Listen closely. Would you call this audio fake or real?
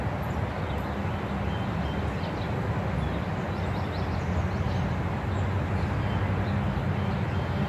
real